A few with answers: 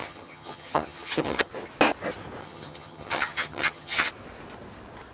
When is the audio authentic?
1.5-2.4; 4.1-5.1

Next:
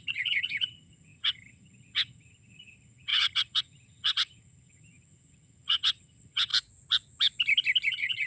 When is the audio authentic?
6.5-7.9